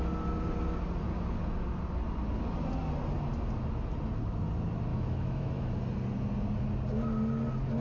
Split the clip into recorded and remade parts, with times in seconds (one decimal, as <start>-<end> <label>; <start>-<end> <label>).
0.0-4.9 recorded; 4.9-5.7 remade; 5.7-7.8 recorded